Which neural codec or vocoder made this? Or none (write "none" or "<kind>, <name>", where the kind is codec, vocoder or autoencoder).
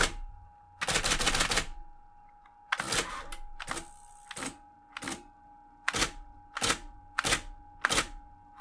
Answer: none